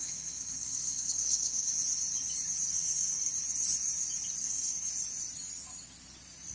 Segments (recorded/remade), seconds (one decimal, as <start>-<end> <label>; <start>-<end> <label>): 0.0-1.7 remade; 1.7-2.7 recorded; 2.7-3.3 remade; 3.3-4.4 recorded; 4.4-4.9 remade; 4.9-6.5 recorded